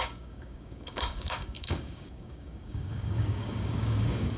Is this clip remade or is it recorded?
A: remade